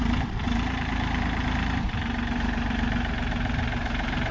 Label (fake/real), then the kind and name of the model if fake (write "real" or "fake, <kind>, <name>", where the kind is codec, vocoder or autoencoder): fake, vocoder, BigVGAN v2